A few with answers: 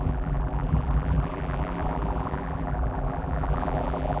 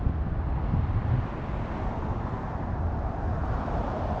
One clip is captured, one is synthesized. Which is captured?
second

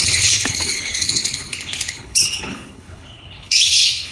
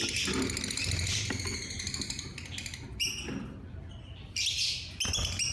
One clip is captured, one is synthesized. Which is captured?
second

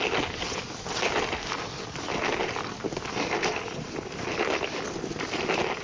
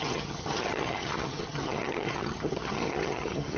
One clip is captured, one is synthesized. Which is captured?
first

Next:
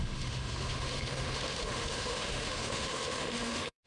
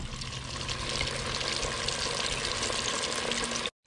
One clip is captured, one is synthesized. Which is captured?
second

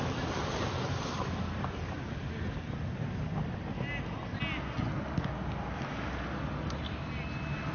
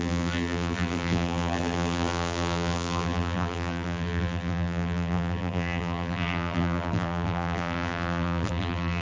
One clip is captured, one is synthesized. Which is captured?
first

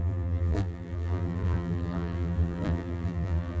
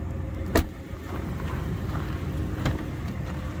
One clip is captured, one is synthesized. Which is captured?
second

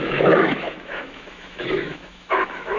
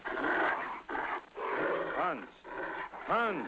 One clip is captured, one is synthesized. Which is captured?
second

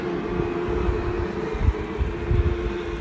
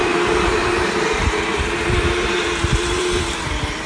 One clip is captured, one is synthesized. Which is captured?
first